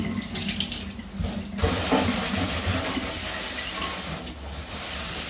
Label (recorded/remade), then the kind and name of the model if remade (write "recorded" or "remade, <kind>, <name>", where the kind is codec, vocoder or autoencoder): recorded